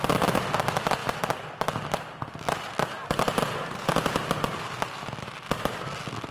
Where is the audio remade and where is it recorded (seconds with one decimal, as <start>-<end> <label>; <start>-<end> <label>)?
0.0-6.3 recorded